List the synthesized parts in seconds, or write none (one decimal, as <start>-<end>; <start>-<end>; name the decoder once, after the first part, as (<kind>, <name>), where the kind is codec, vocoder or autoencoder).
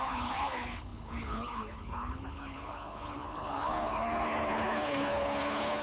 0.0-5.8 (codec, HILCodec)